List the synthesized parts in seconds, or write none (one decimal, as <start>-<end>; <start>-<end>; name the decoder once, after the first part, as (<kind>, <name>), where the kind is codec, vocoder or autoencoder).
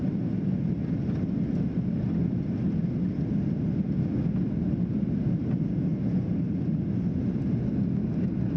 none